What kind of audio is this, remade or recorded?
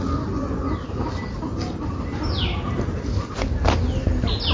recorded